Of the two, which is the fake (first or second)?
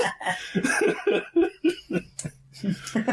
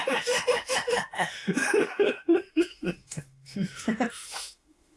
second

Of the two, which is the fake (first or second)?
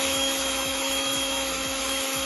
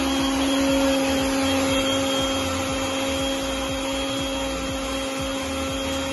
first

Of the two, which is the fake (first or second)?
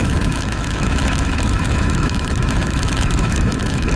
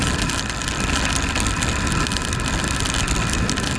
first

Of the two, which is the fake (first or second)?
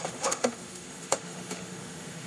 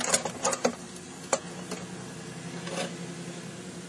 first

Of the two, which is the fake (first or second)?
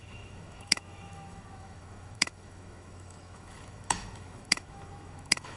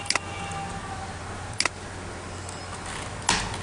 first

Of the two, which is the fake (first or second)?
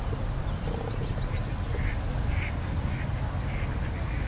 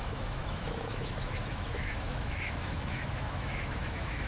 second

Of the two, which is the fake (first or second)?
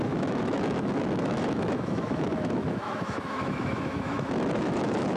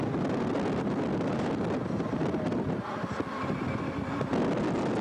first